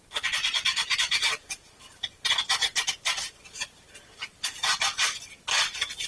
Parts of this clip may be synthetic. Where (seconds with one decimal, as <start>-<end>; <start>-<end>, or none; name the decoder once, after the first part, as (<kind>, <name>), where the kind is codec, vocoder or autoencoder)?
none